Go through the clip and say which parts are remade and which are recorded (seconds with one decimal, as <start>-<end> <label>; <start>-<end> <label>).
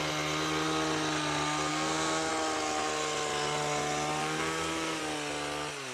0.0-1.7 recorded; 1.7-2.3 remade; 2.3-4.2 recorded; 4.2-5.0 remade; 5.0-5.9 recorded